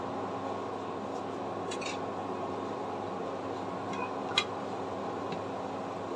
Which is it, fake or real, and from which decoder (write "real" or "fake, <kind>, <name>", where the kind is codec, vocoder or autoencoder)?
fake, vocoder, BigVGAN v2